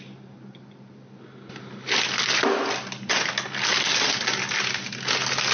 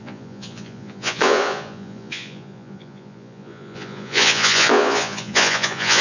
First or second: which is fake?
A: second